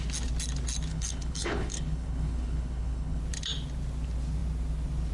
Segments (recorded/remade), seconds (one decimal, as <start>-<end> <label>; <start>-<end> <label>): 0.0-0.9 recorded; 0.9-3.2 remade; 3.2-5.1 recorded